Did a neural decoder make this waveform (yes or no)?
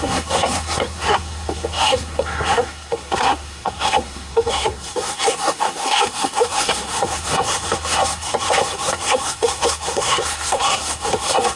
yes